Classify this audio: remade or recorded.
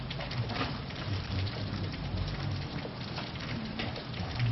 remade